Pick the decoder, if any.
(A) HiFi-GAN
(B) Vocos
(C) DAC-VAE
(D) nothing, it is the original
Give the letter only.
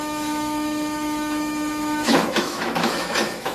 C